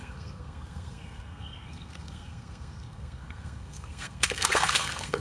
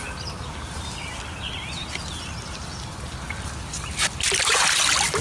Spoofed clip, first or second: first